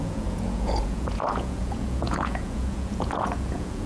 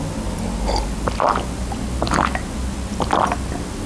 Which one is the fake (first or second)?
first